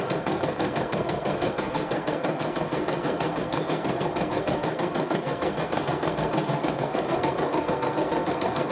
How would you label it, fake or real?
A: fake